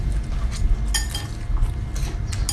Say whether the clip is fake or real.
real